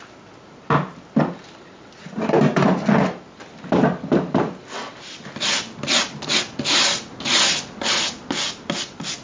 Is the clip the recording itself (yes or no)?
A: yes